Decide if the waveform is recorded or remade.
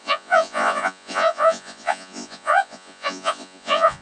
remade